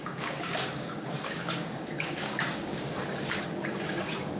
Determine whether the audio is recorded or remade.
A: remade